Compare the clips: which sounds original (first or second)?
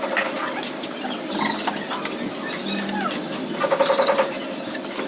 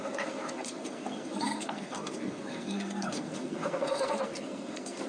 first